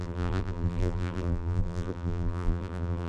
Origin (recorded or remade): remade